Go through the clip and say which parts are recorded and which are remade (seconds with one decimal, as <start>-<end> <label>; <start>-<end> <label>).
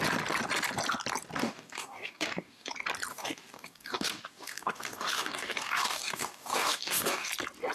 0.0-1.4 recorded; 1.4-2.7 remade; 2.7-3.1 recorded; 3.1-7.3 remade; 7.3-7.7 recorded